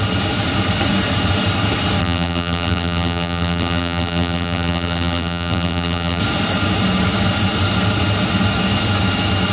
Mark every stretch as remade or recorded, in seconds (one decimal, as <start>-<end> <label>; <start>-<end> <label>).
0.0-2.0 recorded; 2.0-6.2 remade; 6.2-9.5 recorded